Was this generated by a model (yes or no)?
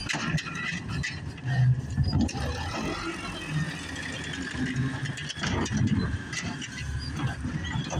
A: no